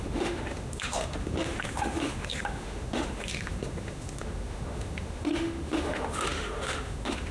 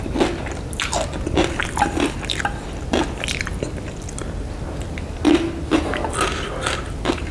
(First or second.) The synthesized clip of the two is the first